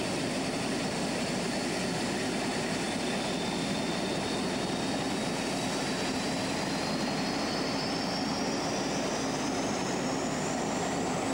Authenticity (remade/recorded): recorded